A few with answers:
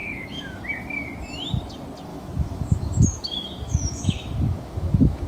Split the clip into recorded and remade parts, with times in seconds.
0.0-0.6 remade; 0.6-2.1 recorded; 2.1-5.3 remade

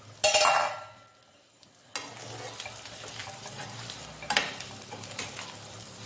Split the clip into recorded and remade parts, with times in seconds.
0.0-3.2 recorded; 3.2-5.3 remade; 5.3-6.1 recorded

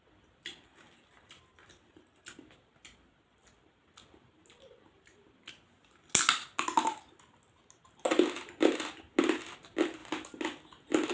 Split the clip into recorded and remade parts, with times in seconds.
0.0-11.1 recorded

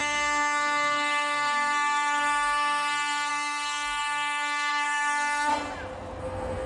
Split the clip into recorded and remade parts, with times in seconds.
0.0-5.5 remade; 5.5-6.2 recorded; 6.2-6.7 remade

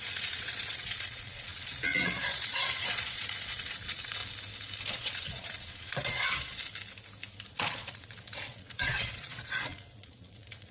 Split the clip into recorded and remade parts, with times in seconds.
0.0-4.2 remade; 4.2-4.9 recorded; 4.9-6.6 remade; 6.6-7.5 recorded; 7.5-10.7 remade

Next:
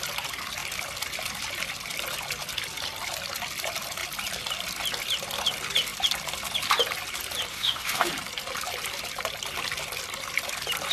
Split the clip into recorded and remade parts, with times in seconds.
0.0-7.5 recorded; 7.5-8.1 remade; 8.1-10.9 recorded

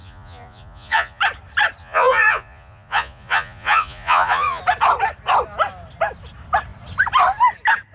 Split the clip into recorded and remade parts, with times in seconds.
0.0-1.2 remade; 1.2-1.8 recorded; 1.8-4.6 remade; 4.6-7.9 recorded